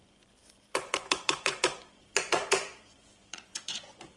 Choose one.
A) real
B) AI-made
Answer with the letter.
B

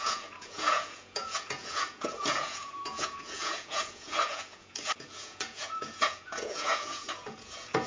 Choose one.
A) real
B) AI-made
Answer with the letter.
B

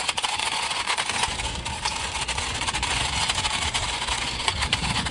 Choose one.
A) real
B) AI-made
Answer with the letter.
B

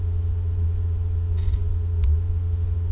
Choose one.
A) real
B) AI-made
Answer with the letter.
B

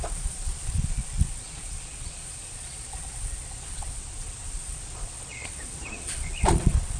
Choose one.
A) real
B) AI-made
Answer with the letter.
B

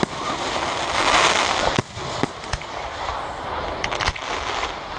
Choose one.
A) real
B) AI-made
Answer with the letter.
A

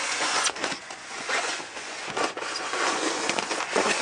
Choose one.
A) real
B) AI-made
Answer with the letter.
B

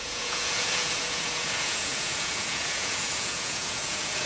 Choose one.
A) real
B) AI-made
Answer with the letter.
B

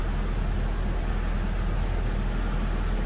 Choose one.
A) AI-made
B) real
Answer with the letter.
B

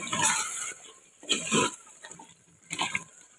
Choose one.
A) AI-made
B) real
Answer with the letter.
B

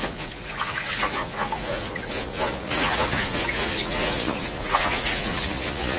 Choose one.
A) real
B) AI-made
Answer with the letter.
B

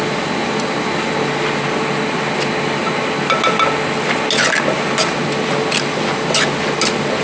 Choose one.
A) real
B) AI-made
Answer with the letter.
A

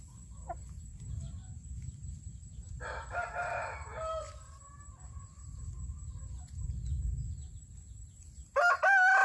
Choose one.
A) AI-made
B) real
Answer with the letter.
B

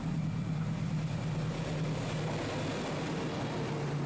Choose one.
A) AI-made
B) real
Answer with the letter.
B